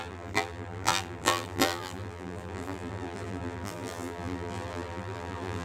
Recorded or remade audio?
remade